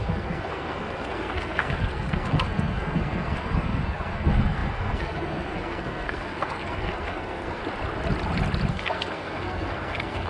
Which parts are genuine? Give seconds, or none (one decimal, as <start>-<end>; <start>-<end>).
7.6-8.7